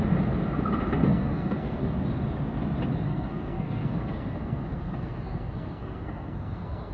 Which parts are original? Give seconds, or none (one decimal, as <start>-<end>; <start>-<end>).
0.0-1.0; 2.0-3.1